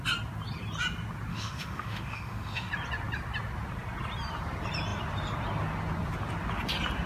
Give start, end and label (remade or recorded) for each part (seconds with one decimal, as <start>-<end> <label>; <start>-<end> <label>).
0.0-1.3 recorded; 1.3-2.7 remade; 2.7-7.1 recorded